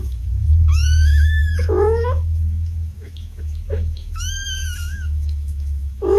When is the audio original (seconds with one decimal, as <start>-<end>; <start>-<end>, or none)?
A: none